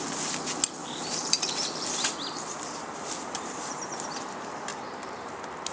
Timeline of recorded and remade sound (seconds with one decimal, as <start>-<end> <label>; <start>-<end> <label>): 0.0-0.8 recorded; 0.8-3.9 remade; 3.9-4.7 recorded; 4.7-5.3 remade; 5.3-5.7 recorded